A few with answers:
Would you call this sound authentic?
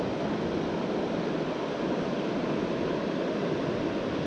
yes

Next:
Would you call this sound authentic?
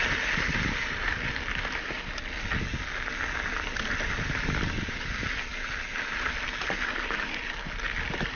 yes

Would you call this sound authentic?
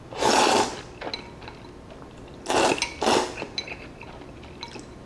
yes